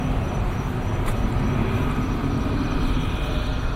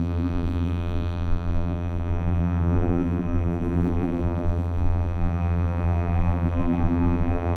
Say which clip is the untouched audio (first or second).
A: first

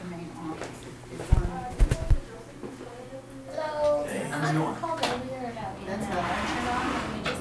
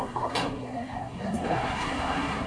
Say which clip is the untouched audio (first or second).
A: first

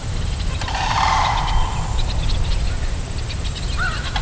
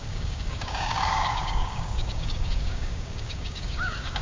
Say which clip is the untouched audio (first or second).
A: first